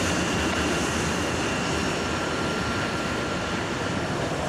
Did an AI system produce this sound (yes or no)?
yes